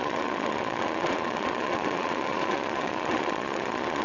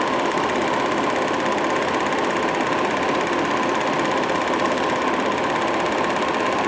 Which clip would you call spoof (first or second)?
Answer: first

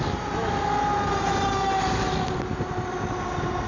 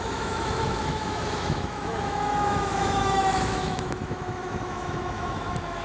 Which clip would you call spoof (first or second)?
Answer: second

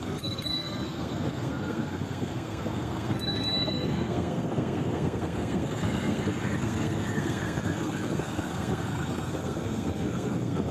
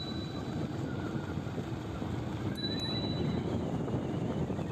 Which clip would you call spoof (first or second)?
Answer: first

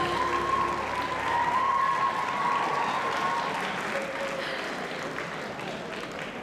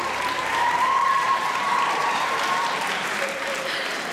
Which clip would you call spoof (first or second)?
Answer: second